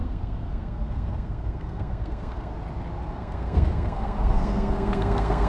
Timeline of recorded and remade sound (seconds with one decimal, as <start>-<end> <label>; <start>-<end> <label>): 0.0-2.5 remade; 2.5-3.1 recorded; 3.1-5.5 remade